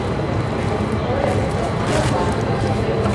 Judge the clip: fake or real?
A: real